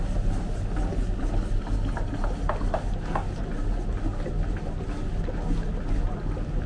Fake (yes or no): no